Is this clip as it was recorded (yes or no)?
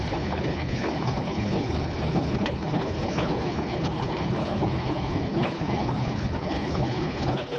no